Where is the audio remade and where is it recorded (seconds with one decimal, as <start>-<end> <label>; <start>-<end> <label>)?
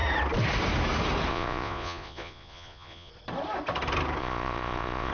0.0-1.3 recorded; 1.3-3.1 remade; 3.1-4.2 recorded; 4.2-5.1 remade